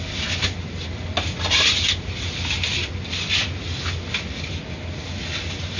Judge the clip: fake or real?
real